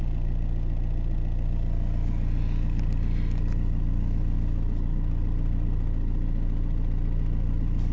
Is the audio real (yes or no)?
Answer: yes